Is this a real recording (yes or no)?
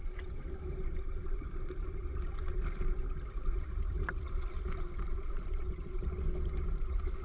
no